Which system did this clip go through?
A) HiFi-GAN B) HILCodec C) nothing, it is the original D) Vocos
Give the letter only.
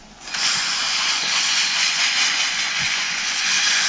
D